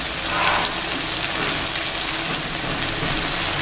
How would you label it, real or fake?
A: real